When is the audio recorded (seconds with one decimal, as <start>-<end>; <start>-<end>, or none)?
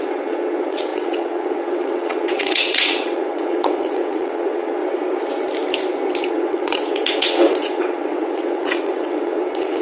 4.8-6.3